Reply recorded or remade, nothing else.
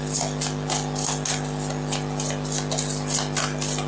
recorded